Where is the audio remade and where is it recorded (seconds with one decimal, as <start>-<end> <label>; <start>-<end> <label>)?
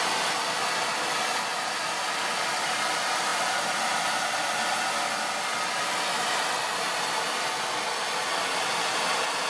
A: 0.0-1.5 recorded; 1.5-2.1 remade; 2.1-3.3 recorded; 3.3-4.5 remade; 4.5-9.5 recorded